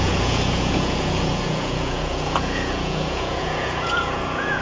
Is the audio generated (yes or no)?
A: yes